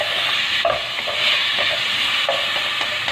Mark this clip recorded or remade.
recorded